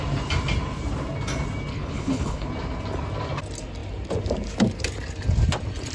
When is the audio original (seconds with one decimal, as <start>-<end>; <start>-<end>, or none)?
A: 0.0-1.7; 2.5-5.9